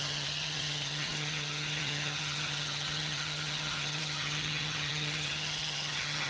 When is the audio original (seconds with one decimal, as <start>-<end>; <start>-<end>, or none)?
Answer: none